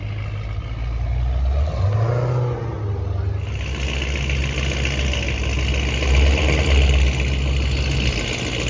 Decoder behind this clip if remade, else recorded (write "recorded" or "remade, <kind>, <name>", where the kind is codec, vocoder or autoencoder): recorded